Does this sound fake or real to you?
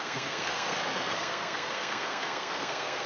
fake